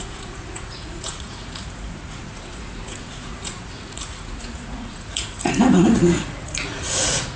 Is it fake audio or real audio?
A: fake